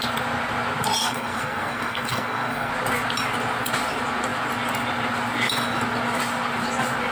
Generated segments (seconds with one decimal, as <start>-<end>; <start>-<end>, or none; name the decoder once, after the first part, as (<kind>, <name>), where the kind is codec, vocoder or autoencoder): 1.0-2.7 (codec, SNAC)